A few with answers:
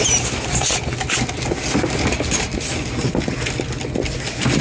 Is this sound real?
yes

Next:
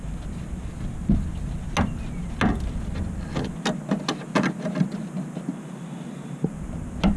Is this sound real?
yes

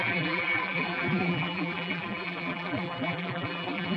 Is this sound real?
no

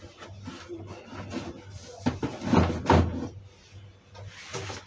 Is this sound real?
yes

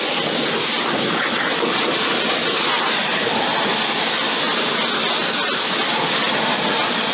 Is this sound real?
yes